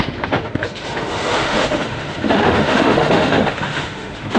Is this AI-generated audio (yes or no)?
yes